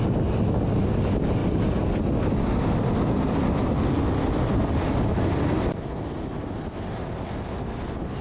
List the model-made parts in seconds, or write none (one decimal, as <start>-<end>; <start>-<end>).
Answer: none